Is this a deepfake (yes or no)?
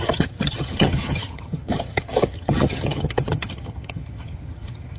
yes